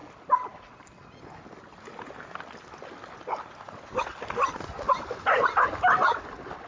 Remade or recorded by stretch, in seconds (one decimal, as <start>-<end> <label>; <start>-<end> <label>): 0.0-6.7 recorded